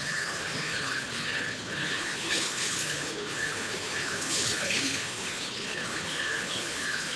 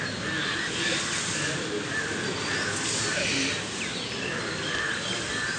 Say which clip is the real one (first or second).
second